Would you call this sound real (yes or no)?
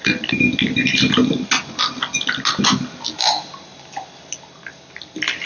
yes